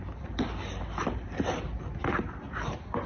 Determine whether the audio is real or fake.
real